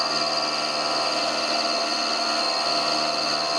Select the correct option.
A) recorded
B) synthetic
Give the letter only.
A